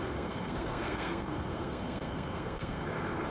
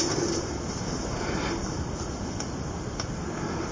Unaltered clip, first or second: second